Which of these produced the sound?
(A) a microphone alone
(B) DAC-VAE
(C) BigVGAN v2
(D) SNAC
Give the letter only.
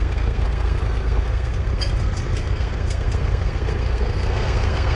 D